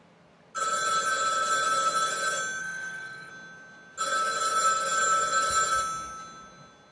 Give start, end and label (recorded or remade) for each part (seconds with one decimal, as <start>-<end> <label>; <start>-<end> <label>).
0.0-2.6 recorded; 2.6-3.3 remade; 3.3-6.9 recorded